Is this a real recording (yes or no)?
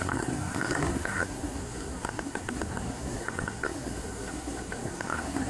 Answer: no